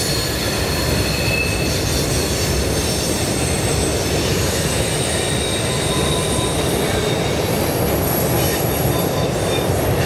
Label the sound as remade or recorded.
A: remade